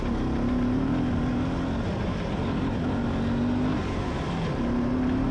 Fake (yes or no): no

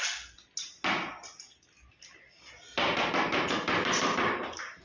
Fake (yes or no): no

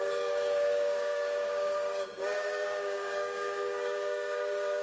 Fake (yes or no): yes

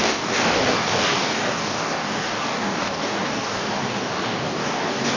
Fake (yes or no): yes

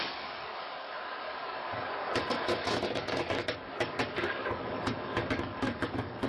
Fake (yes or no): yes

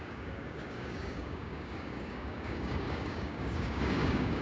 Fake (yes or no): yes